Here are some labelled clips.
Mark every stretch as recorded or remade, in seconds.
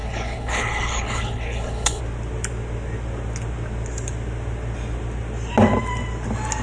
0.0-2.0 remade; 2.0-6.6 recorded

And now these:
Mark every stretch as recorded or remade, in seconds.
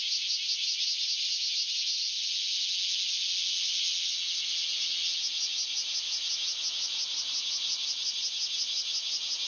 0.0-9.5 recorded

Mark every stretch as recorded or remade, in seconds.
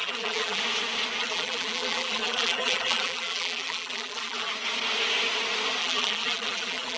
0.0-0.6 remade; 0.6-1.2 recorded; 1.2-4.5 remade; 4.5-5.8 recorded; 5.8-7.0 remade